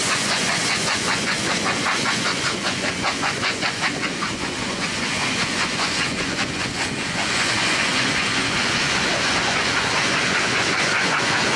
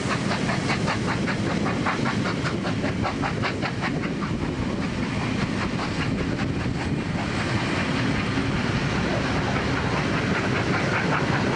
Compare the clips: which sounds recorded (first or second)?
second